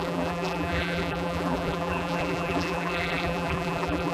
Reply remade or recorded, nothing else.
remade